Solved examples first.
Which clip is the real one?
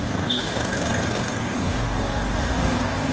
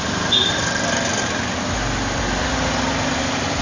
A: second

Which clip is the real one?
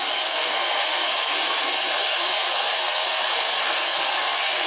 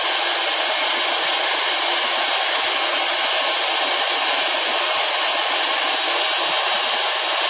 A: second